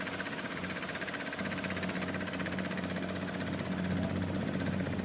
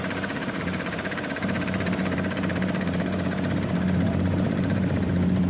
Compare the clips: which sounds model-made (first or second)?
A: second